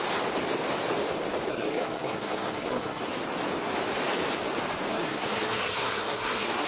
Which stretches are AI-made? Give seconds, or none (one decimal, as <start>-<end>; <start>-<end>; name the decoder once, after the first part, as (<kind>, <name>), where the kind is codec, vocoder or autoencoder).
1.5-3.0 (codec, SNAC); 4.9-6.7